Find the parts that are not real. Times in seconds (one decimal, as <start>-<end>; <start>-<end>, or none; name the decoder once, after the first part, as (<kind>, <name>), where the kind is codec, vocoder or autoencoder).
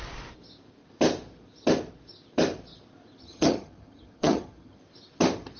3.2-4.8 (vocoder, HiFi-GAN)